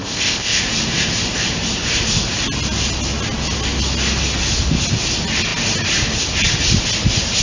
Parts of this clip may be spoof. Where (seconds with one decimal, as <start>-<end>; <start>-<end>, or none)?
0.0-0.6